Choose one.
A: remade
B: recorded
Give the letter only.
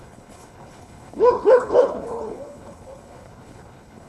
A